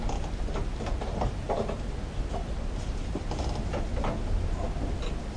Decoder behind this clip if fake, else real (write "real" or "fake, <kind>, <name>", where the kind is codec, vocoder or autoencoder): real